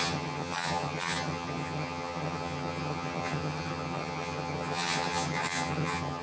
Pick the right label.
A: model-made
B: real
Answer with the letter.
A